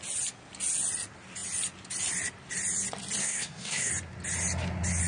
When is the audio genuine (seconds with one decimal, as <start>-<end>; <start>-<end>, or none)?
0.0-3.2; 3.9-5.1